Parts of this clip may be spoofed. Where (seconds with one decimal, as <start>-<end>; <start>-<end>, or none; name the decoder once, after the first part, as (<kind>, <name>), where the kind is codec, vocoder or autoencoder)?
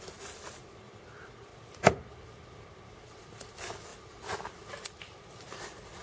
none